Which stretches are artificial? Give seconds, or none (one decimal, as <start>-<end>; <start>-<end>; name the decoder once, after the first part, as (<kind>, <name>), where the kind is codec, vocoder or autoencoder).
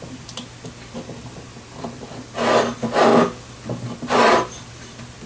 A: none